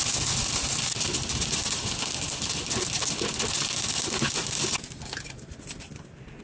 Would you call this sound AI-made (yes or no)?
no